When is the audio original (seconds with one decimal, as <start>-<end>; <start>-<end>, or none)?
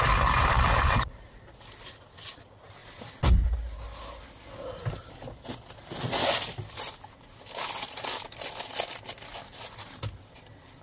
0.0-10.8